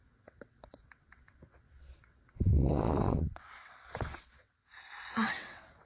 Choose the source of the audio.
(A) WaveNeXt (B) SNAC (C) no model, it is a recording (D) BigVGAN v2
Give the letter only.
A